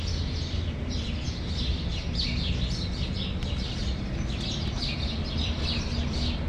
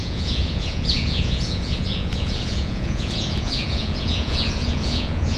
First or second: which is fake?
second